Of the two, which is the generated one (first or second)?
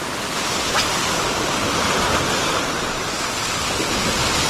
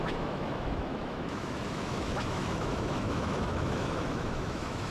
second